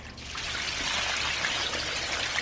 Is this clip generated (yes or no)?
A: no